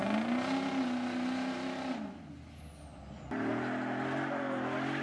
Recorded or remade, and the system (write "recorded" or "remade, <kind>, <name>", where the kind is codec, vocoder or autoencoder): recorded